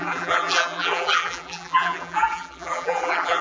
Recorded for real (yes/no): no